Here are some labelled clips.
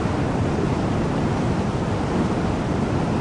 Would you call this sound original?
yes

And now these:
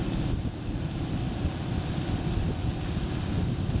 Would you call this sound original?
yes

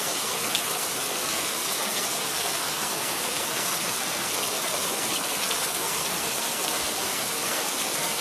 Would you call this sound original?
no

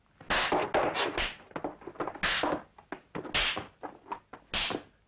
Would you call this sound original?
yes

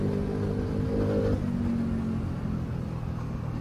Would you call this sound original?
yes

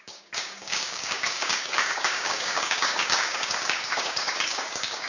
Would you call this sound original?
no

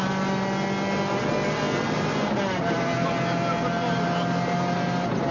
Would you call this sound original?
yes